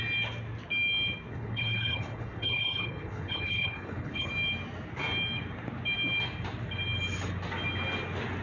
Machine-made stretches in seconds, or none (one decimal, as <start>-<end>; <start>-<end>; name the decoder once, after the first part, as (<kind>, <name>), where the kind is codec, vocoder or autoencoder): 1.3-4.3 (codec, HILCodec)